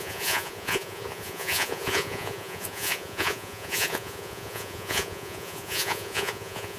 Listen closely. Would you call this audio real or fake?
fake